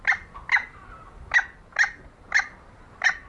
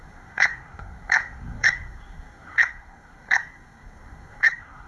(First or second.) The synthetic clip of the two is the second